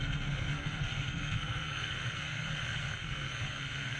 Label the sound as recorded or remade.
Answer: remade